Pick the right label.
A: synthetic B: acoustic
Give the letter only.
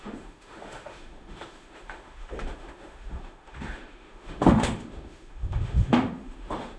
A